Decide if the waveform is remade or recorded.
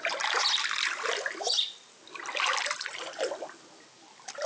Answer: recorded